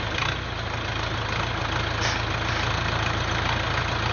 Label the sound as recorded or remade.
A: recorded